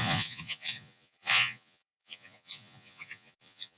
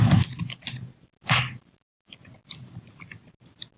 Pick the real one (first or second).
second